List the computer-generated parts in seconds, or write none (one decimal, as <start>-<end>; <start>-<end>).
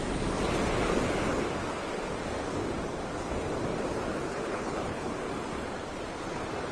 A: 4.5-5.1